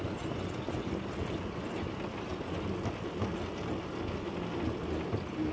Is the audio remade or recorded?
recorded